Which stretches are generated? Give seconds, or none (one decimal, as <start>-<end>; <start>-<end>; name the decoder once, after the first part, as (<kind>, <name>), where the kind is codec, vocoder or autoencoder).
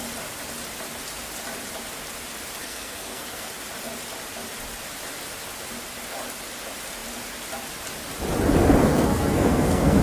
2.6-3.5 (codec, SNAC); 8.8-10.0